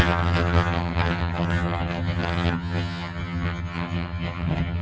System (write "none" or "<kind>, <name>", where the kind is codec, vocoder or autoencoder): vocoder, HiFi-GAN